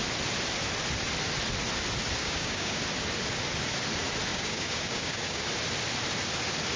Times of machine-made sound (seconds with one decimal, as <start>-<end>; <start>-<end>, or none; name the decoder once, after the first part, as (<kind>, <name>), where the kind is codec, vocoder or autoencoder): 2.2-2.8 (codec, DAC); 4.3-5.5